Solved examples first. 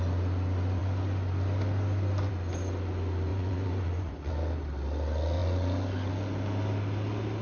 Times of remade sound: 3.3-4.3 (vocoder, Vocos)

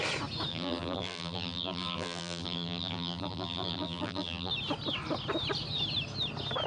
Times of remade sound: 0.5-4.5 (vocoder, BigVGAN v2)